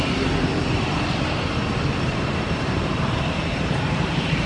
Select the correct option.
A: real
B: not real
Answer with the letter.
B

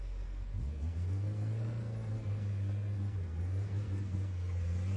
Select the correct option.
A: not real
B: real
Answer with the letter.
A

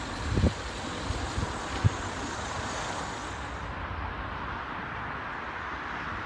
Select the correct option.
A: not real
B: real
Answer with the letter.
B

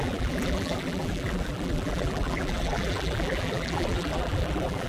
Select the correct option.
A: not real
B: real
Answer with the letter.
A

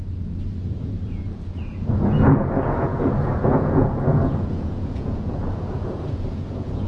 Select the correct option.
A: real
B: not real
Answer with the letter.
B